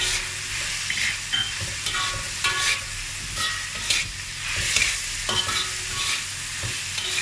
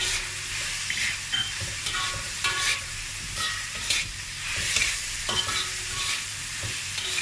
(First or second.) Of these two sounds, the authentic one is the first